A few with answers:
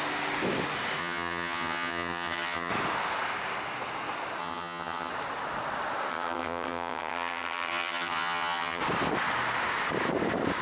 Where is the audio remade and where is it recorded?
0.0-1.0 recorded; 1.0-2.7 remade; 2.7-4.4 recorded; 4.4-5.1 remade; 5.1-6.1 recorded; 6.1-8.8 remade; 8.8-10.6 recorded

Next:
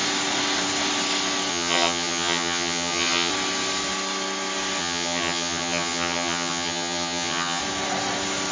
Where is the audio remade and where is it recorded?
0.0-1.5 recorded; 1.5-3.3 remade; 3.3-4.8 recorded; 4.8-7.6 remade; 7.6-8.5 recorded

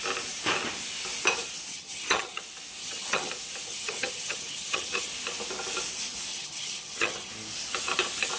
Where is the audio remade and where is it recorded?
0.0-1.7 recorded; 1.7-2.4 remade; 2.4-2.8 recorded; 2.8-3.3 remade; 3.3-3.7 recorded; 3.7-5.1 remade; 5.1-6.3 recorded; 6.3-7.3 remade; 7.3-8.4 recorded

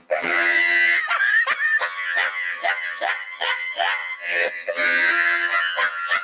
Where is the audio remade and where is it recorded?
0.0-1.0 remade; 1.0-1.8 recorded; 1.8-6.2 remade

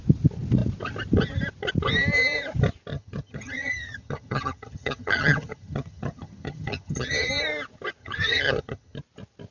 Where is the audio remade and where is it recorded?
0.0-2.9 recorded; 2.9-7.3 remade; 7.3-8.0 recorded; 8.0-9.0 remade; 9.0-9.5 recorded